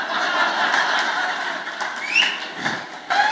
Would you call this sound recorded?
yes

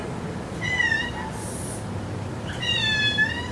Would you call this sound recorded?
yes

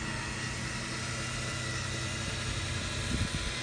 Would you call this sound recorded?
yes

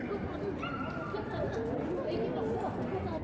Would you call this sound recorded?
yes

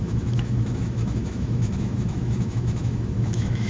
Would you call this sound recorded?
no